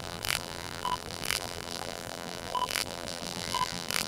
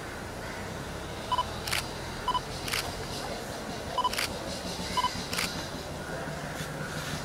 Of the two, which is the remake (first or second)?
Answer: first